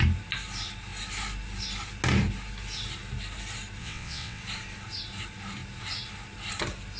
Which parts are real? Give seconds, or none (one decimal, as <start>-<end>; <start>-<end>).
0.0-3.8; 4.4-7.0